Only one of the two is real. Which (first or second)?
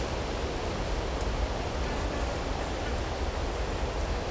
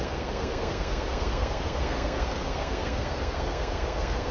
first